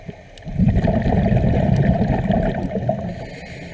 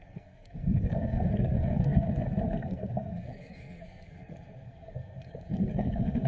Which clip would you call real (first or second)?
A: first